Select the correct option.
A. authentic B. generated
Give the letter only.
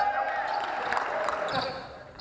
A